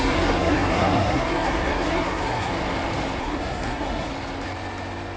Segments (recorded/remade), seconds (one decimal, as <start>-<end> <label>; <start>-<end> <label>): 0.0-2.5 remade; 2.5-3.2 recorded; 3.2-4.1 remade; 4.1-5.2 recorded